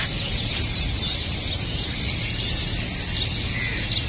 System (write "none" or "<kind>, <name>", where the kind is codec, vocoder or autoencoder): none